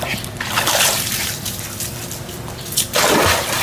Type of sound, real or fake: real